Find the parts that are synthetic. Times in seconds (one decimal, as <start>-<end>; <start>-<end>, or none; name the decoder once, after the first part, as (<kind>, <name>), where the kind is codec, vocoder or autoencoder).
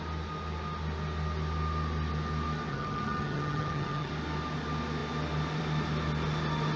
2.7-4.1 (vocoder, HiFi-GAN)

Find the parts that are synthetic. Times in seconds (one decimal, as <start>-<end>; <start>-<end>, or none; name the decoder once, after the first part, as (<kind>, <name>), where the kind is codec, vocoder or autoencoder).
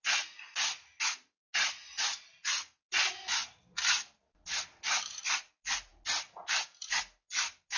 none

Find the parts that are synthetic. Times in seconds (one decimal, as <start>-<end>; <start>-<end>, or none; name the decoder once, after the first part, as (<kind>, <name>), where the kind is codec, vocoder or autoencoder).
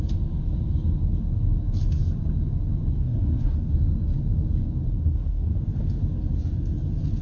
3.0-3.7 (codec, SNAC); 4.9-5.6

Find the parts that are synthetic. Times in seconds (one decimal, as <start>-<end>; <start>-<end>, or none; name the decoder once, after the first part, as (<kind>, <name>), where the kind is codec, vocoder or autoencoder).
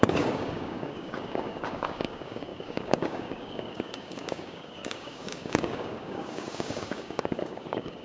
0.0-8.0 (codec, DAC)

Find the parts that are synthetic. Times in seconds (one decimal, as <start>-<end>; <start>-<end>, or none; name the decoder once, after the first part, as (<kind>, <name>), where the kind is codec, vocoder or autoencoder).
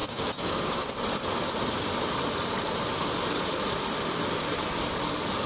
0.0-0.9 (codec, DAC)